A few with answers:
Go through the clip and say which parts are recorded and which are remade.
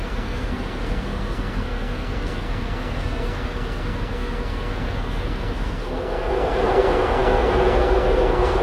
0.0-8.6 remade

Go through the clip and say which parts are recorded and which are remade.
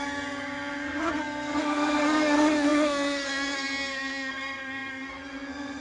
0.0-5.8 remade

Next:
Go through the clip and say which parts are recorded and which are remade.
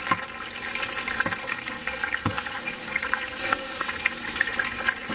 0.0-1.4 recorded; 1.4-4.5 remade; 4.5-5.1 recorded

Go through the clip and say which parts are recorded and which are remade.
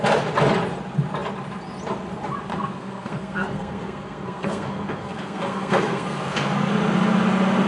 0.0-2.5 recorded; 2.5-6.7 remade; 6.7-7.7 recorded